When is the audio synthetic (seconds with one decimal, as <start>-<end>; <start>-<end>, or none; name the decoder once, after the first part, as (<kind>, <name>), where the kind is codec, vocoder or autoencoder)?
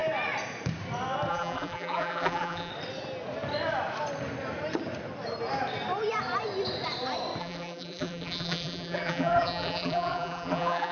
1.3-2.7 (vocoder, BigVGAN v2); 7.4-10.9